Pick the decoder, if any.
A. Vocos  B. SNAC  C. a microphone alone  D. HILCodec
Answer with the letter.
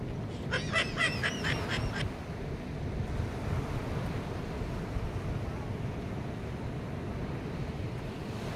C